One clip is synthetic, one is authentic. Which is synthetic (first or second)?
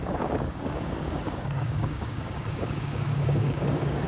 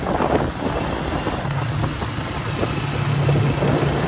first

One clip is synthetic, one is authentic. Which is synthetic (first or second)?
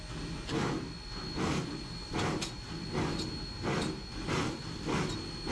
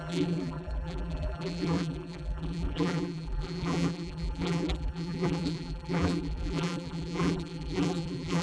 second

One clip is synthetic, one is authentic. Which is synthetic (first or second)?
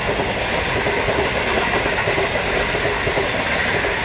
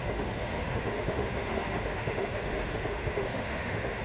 second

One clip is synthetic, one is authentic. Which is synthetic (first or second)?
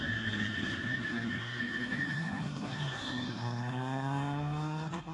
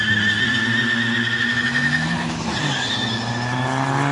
first